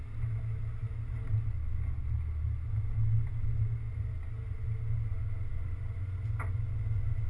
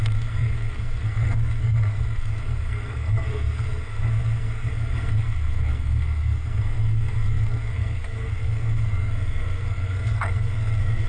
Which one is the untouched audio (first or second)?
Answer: first